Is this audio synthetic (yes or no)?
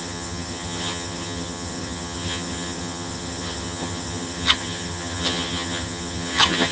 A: yes